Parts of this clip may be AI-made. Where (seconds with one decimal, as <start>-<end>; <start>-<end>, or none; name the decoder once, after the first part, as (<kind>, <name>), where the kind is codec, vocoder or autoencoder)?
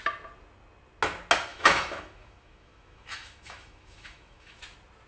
1.5-4.6 (autoencoder, DAC-VAE)